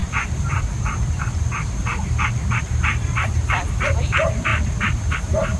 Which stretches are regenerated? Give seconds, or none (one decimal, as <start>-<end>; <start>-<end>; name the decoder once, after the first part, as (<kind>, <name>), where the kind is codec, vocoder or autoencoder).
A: 0.0-1.2 (vocoder, BigVGAN v2); 2.9-3.7; 4.5-5.0